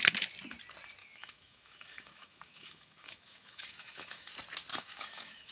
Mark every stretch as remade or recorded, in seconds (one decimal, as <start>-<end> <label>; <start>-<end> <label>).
0.0-1.0 recorded; 1.0-4.3 remade; 4.3-4.7 recorded; 4.7-5.5 remade